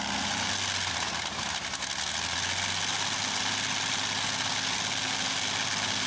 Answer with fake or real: real